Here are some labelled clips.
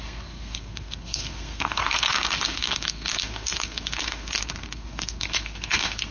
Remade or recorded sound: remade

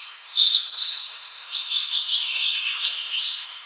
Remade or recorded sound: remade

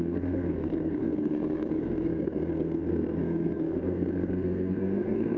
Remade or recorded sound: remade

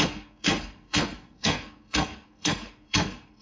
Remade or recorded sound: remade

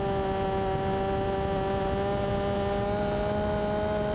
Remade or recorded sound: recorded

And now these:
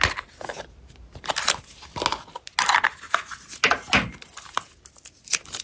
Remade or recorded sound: recorded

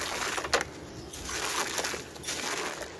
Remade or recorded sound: recorded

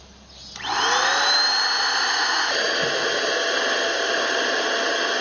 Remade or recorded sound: recorded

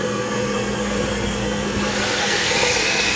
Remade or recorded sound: remade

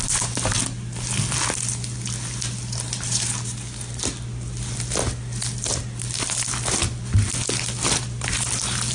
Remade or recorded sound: recorded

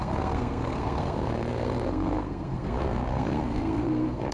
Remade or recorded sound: remade